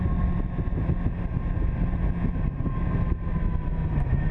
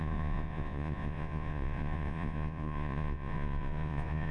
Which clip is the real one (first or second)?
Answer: first